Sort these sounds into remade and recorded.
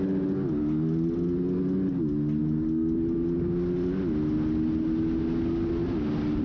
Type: recorded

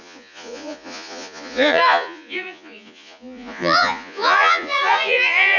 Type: remade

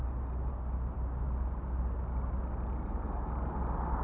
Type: recorded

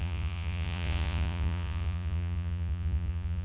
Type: remade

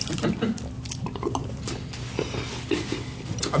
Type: recorded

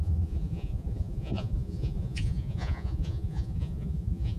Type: remade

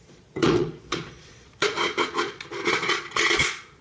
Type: remade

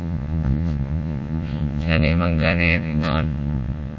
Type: remade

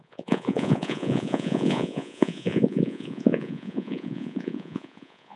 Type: remade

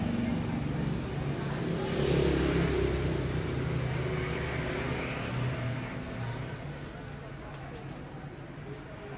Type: recorded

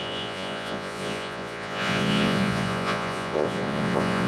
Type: remade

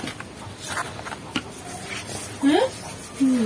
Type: recorded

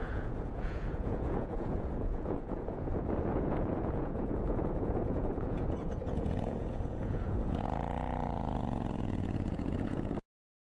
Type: remade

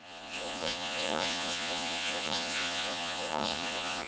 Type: remade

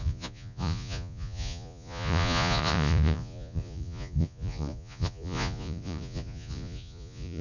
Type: remade